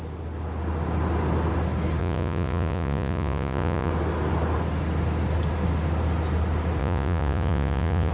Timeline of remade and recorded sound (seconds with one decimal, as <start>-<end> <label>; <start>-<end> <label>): 0.0-2.0 recorded; 2.0-3.9 remade; 3.9-6.8 recorded; 6.8-8.1 remade